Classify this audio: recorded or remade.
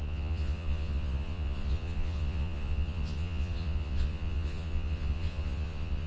remade